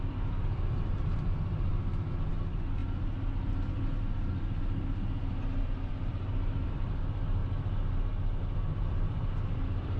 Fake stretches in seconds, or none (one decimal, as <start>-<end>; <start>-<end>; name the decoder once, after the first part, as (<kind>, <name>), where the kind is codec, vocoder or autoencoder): 0.0-1.7 (vocoder, BigVGAN v2); 2.3-2.8; 5.9-7.4; 8.4-10.0